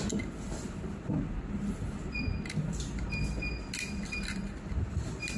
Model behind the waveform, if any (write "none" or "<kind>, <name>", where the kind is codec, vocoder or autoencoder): none